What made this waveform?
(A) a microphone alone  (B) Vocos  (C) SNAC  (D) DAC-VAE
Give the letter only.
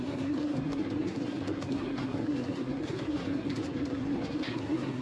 C